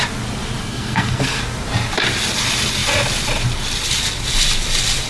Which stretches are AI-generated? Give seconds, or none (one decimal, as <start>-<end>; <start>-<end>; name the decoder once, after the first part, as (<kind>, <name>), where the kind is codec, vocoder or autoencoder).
0.6-1.4 (codec, SNAC)